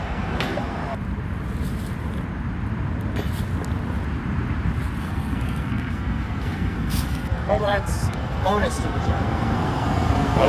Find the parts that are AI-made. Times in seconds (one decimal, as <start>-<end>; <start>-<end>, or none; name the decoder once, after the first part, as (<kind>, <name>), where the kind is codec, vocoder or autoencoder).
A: 0.0-0.8 (codec, SNAC); 5.0-10.5